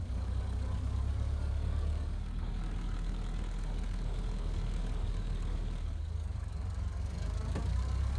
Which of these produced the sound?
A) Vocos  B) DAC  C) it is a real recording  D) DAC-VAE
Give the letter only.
B